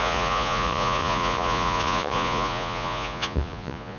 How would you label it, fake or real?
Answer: fake